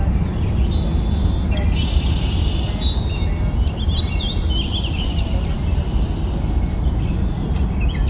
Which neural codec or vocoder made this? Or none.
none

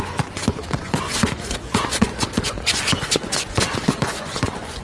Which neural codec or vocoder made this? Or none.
vocoder, Vocos